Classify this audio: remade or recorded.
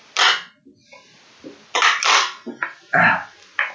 recorded